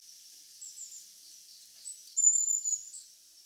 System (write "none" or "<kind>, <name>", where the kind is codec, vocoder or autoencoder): none